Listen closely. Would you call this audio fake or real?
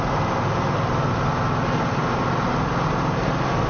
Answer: real